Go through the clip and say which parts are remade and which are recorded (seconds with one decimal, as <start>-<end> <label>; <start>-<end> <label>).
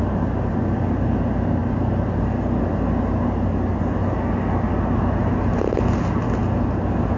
0.0-7.2 recorded